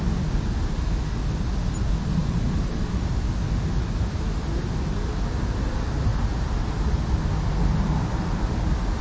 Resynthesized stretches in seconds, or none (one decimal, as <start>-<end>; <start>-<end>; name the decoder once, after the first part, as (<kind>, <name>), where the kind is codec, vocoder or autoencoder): 2.2-3.1 (vocoder, BigVGAN v2)